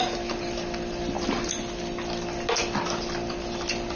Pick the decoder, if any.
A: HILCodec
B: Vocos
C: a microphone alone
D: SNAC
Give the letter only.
C